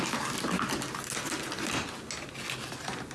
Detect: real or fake real